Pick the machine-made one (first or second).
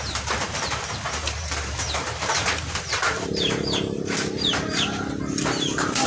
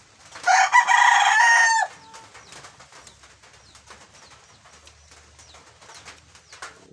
first